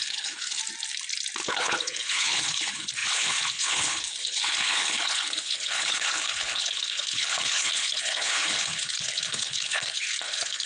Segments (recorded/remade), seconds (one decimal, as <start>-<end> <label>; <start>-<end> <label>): 0.0-0.6 remade; 0.6-1.4 recorded; 1.4-10.7 remade